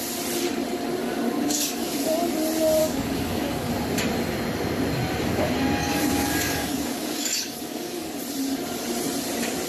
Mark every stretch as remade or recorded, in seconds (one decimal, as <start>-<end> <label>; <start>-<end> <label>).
0.0-1.0 recorded; 1.0-2.1 remade; 2.1-2.8 recorded; 2.8-3.7 remade; 3.7-5.8 recorded; 5.8-8.1 remade; 8.1-9.7 recorded